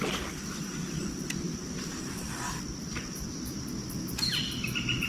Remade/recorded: recorded